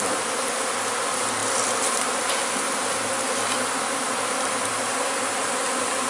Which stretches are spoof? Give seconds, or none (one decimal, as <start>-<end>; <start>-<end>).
none